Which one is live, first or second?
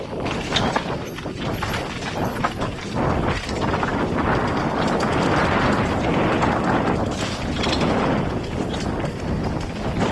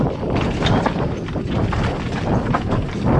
first